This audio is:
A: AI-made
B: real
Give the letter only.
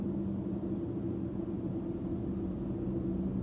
B